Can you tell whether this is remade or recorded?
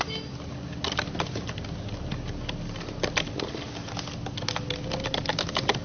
recorded